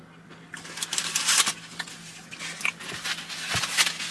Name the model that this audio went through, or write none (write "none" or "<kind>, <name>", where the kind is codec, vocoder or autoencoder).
none